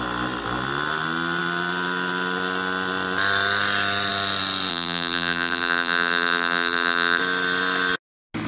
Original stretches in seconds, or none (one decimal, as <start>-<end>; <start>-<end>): 0.0-4.7; 7.2-8.5

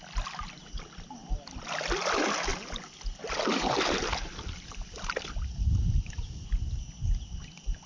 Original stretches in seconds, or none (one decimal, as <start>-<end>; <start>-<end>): 0.0-7.9

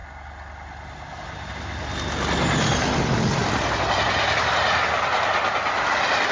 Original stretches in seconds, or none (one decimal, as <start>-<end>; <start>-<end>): 0.0-6.3

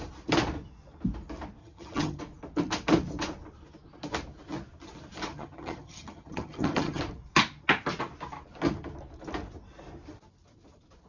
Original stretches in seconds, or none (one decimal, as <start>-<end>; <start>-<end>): 0.0-1.6; 2.2-5.3; 7.0-11.1

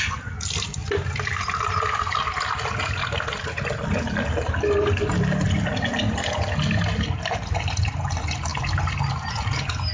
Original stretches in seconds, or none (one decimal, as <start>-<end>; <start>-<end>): 0.0-9.9

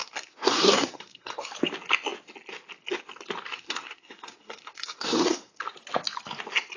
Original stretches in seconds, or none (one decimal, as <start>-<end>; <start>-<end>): 1.5-3.5; 5.6-6.8

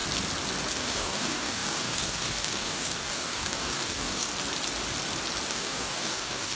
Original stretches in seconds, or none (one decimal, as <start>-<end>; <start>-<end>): 0.0-0.7; 4.3-5.5

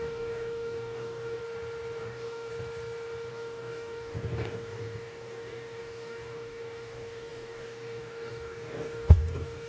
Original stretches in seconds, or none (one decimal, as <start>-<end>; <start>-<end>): 1.4-2.0; 2.5-3.3